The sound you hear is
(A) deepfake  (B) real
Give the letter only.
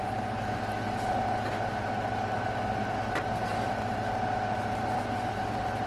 B